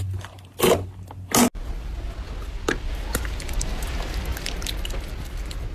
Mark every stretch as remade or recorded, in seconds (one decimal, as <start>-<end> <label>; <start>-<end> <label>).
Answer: 0.0-5.7 recorded